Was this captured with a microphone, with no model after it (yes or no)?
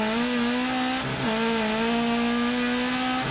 yes